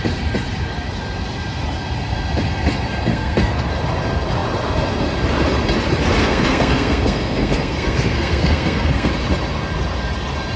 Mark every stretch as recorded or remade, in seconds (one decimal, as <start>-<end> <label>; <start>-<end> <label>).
0.0-3.1 recorded; 3.1-3.7 remade; 3.7-6.2 recorded; 6.2-9.1 remade; 9.1-10.6 recorded